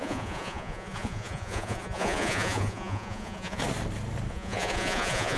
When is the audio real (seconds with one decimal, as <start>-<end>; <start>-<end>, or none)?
3.6-4.3